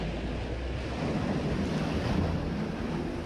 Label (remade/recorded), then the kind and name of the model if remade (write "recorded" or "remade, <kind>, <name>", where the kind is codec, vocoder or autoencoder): recorded